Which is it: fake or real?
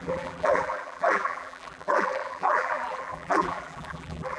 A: fake